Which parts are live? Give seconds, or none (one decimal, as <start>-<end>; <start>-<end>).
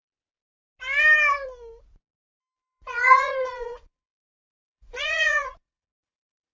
0.0-2.4